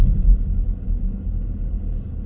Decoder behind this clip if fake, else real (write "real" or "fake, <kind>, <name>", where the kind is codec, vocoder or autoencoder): real